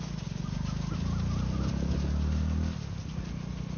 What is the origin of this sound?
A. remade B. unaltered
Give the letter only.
B